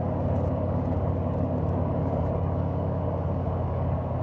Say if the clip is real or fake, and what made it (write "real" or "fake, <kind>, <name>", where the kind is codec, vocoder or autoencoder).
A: fake, codec, DAC